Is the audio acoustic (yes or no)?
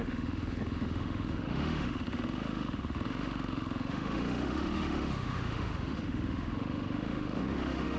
no